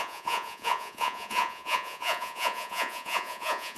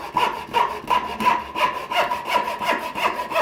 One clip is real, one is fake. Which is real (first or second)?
second